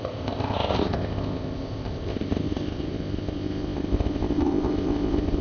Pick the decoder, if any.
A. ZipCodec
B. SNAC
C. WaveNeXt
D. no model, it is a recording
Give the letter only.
A